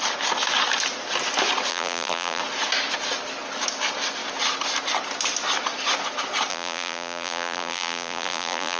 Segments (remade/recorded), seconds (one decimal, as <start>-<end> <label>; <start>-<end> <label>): 0.0-1.7 recorded; 1.7-2.4 remade; 2.4-6.5 recorded; 6.5-8.8 remade